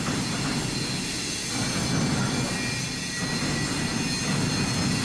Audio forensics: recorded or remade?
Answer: recorded